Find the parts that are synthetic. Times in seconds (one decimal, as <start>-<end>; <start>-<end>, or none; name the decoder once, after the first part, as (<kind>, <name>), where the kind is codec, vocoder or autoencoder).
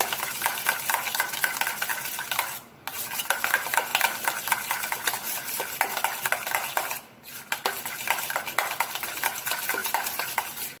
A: 9.8-10.4 (vocoder, BigVGAN v2)